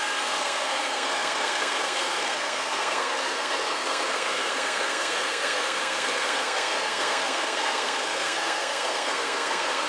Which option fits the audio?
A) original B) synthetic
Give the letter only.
B